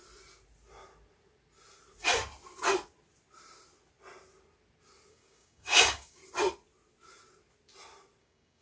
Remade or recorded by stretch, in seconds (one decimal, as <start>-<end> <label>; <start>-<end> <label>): 0.0-5.1 recorded; 5.1-6.2 remade; 6.2-8.2 recorded; 8.2-8.6 remade